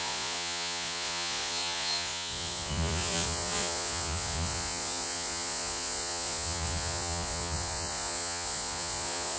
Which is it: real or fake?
fake